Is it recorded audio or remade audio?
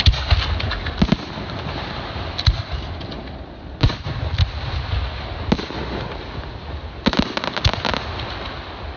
recorded